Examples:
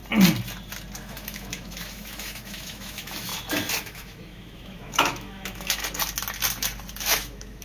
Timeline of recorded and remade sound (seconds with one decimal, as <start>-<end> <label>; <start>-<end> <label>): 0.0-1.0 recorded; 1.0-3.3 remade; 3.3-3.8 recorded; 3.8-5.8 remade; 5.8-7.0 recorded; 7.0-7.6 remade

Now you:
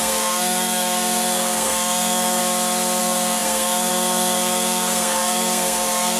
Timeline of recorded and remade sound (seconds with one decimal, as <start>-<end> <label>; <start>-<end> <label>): 0.0-2.4 remade; 2.4-3.0 recorded; 3.0-6.2 remade

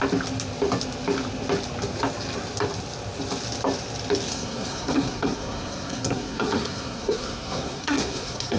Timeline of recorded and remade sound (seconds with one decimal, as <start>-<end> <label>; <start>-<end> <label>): 0.0-4.3 recorded; 4.3-8.6 remade

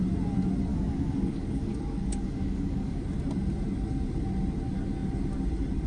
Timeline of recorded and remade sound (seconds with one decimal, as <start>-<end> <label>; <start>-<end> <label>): 0.0-0.7 recorded; 0.7-3.0 remade; 3.0-5.9 recorded

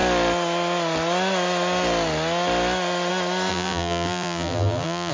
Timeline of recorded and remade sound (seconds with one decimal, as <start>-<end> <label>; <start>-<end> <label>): 0.0-3.5 recorded; 3.5-5.1 remade

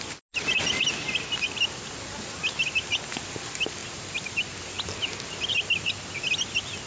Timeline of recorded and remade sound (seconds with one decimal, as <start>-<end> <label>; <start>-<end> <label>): 0.0-6.9 recorded

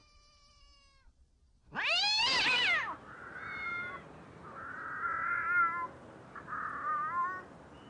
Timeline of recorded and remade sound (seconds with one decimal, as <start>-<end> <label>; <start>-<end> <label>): 0.0-7.9 recorded

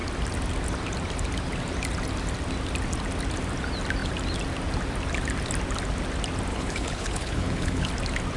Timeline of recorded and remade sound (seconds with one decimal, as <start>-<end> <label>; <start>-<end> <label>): 0.0-6.5 recorded; 6.5-7.9 remade; 7.9-8.4 recorded